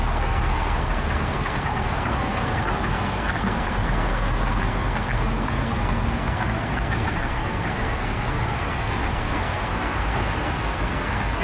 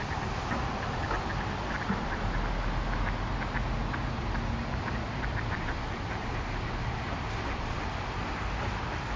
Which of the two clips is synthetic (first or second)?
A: first